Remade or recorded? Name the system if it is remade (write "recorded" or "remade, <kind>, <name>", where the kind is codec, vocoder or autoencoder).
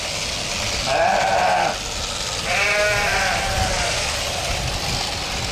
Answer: recorded